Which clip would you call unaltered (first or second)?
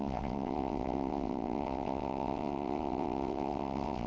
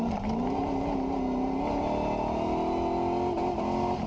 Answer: second